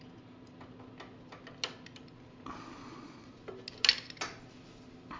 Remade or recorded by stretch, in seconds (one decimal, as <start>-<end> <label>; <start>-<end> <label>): 0.0-2.8 recorded; 2.8-3.3 remade; 3.3-5.2 recorded